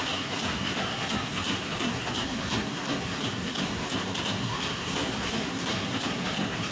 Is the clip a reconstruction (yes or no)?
yes